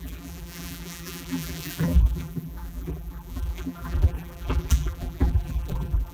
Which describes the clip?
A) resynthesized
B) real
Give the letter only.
A